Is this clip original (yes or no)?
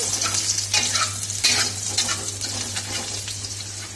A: yes